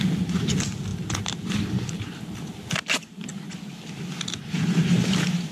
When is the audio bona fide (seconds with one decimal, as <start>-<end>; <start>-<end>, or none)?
0.0-5.5